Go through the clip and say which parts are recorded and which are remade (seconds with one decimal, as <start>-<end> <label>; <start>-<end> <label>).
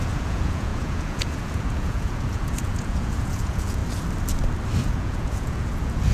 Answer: 0.0-3.8 remade; 3.8-4.8 recorded; 4.8-6.1 remade